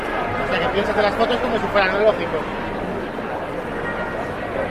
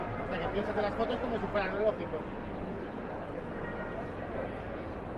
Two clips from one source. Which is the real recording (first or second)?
first